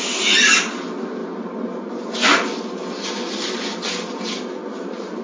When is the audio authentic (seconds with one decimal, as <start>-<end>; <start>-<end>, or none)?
0.0-5.2